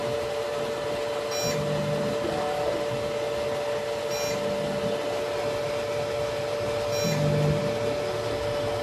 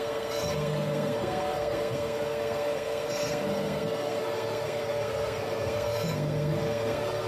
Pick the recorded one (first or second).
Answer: first